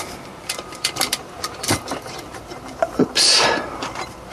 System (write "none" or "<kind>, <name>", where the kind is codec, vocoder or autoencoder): vocoder, BigVGAN v2